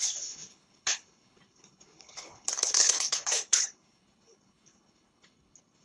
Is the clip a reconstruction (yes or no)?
yes